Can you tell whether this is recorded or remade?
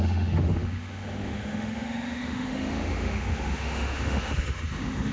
remade